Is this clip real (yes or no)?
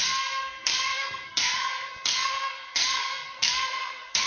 no